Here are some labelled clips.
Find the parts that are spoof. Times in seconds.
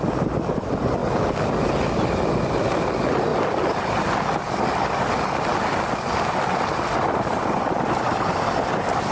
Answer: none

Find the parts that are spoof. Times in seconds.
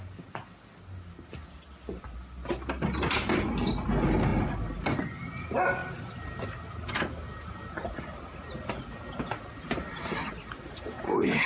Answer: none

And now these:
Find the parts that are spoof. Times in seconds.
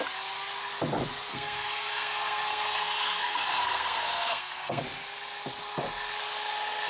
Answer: 1.3-4.8 (codec, SNAC)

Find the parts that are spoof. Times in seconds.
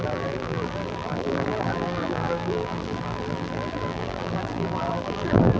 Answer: 0.0-5.6 (vocoder, BigVGAN v2)